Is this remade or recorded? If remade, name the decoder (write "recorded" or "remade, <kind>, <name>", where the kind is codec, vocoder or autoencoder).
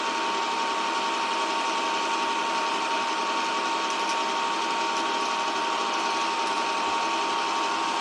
recorded